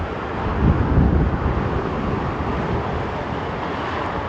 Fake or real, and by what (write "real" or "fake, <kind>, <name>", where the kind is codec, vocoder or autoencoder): real